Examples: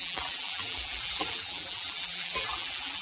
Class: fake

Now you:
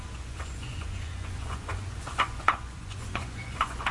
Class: fake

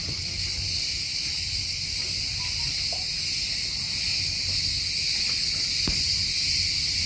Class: real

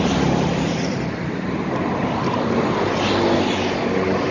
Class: real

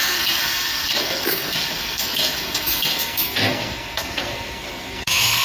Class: fake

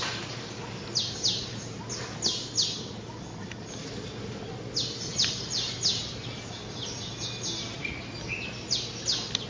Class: real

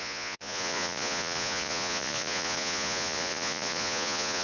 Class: fake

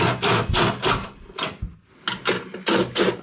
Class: real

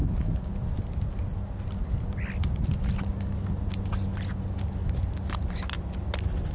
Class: real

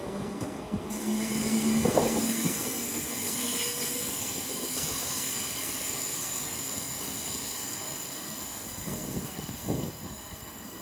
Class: fake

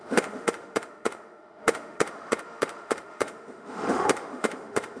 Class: fake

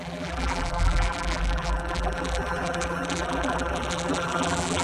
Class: fake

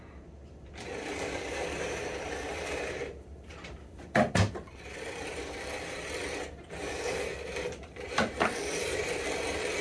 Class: fake